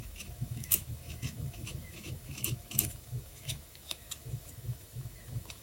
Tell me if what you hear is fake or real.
fake